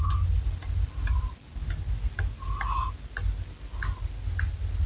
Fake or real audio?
real